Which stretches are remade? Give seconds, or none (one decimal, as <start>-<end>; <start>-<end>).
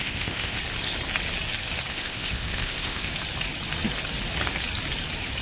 0.0-0.6; 1.9-3.1